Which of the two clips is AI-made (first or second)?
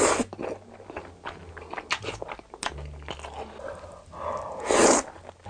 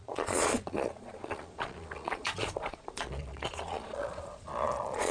second